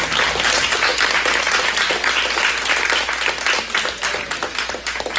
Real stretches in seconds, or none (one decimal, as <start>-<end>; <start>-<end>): 0.0-5.2